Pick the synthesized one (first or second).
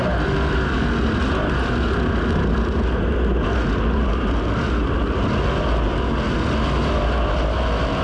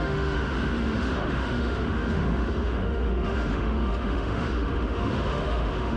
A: second